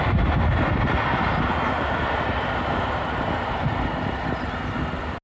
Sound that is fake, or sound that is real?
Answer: real